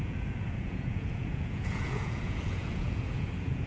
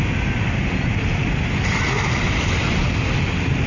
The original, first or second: second